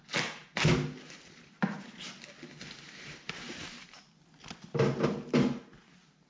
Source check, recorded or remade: recorded